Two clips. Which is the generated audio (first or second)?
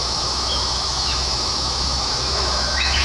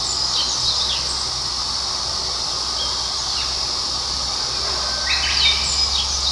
first